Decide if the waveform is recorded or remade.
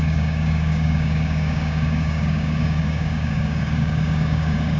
remade